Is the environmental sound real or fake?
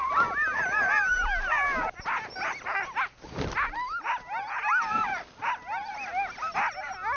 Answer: real